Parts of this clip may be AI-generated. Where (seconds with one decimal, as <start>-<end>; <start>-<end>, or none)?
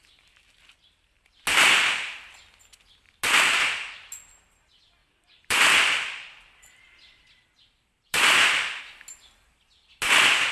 5.0-8.8